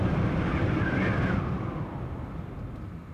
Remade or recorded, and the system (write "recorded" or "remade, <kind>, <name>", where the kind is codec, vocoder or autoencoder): recorded